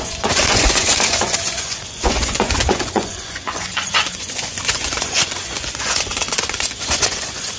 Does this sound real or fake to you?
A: fake